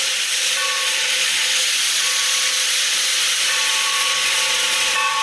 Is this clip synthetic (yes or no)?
yes